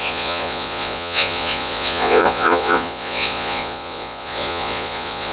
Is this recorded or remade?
remade